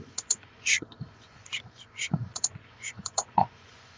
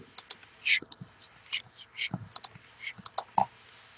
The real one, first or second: second